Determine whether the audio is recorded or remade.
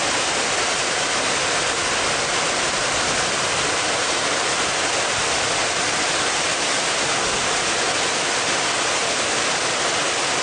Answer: recorded